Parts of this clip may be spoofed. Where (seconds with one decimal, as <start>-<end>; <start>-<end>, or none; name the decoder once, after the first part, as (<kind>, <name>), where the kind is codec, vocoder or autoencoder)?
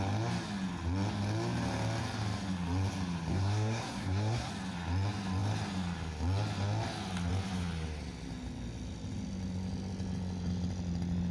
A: 3.3-4.5 (codec, SNAC)